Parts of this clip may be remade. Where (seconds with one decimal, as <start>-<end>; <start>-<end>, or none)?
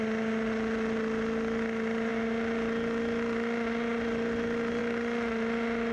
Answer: none